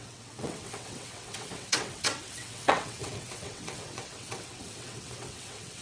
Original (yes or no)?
no